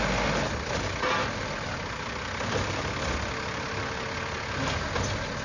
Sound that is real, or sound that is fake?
real